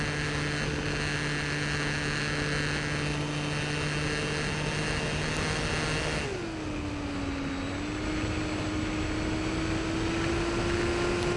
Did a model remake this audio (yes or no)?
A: no